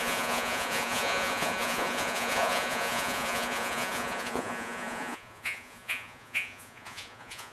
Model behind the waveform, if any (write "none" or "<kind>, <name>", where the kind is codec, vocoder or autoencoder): vocoder, Vocos